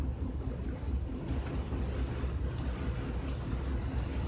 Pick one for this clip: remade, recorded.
recorded